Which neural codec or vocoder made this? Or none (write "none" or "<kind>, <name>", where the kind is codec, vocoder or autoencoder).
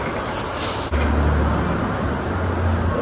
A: none